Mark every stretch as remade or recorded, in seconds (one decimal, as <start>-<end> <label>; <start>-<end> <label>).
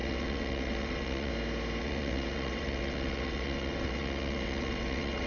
0.0-1.3 remade; 1.3-1.8 recorded; 1.8-5.3 remade